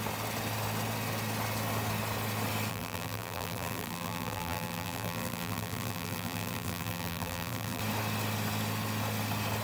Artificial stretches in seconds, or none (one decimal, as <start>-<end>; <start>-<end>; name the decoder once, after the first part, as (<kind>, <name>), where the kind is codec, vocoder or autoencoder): 2.7-7.8 (vocoder, BigVGAN v2)